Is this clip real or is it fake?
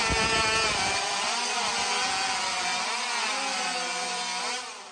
real